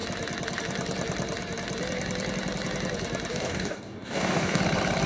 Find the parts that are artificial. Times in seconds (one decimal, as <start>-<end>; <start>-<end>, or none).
3.3-4.6